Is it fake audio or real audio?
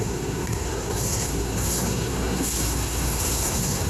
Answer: fake